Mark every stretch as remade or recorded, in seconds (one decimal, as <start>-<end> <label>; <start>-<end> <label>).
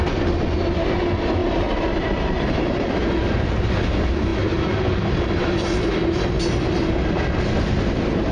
0.0-1.4 recorded; 1.4-3.6 remade; 3.6-8.3 recorded